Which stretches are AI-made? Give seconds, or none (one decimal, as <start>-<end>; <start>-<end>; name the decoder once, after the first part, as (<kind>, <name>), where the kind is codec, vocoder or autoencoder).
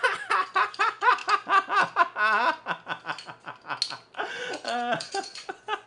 0.0-1.2 (vocoder, Vocos); 4.3-5.9